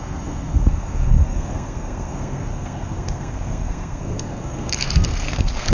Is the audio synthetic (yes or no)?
yes